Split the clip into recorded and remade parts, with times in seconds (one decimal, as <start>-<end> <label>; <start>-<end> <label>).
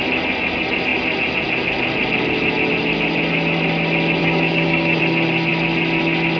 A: 0.0-4.2 recorded; 4.2-5.0 remade; 5.0-6.4 recorded